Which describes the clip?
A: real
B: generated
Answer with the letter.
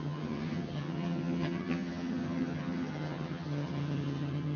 B